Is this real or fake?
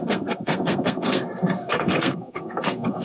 fake